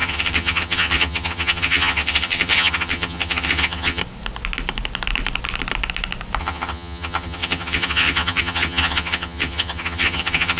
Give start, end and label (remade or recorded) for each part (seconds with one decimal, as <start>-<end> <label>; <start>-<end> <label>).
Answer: 0.0-4.0 remade; 4.0-6.4 recorded; 6.4-10.6 remade